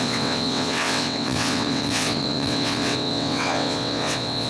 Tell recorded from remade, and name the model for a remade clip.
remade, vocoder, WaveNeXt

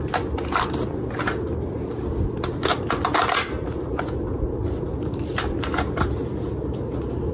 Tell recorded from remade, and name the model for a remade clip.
recorded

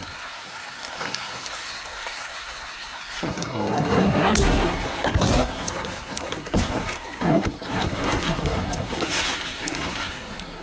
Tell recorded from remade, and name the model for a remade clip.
remade, codec, SNAC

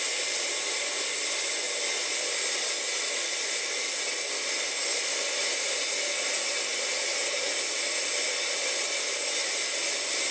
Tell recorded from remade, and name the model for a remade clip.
recorded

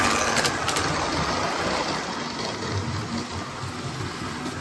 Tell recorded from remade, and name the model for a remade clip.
recorded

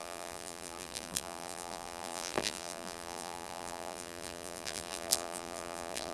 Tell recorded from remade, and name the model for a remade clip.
remade, vocoder, BigVGAN v2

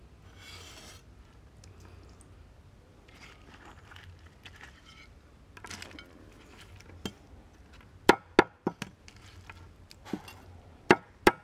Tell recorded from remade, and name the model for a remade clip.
recorded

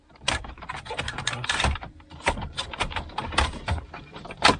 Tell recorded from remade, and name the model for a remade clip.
remade, vocoder, BigVGAN v2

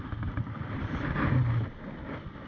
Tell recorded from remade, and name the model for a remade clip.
recorded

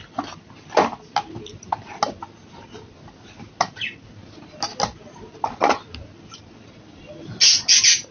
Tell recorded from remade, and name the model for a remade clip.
recorded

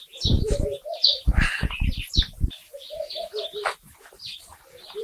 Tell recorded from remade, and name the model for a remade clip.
remade, vocoder, BigVGAN v2